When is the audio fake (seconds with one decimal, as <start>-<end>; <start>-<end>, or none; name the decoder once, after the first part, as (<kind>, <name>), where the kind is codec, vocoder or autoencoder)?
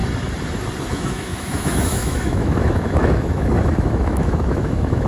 0.9-5.1 (autoencoder, DAC-VAE)